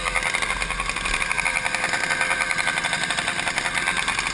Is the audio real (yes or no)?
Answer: yes